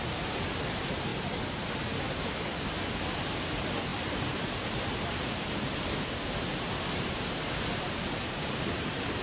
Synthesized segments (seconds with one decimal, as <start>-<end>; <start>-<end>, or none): 0.0-2.5; 3.3-9.2